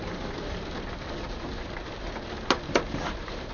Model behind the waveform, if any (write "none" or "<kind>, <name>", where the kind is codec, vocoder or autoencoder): vocoder, BigVGAN v2